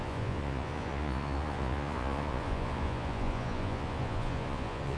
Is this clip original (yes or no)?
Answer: no